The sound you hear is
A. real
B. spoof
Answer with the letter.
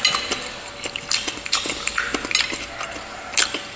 A